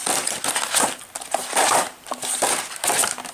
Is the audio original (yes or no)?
yes